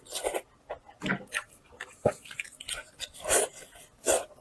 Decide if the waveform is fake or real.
real